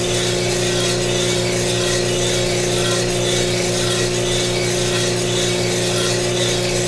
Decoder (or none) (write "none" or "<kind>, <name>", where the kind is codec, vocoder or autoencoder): none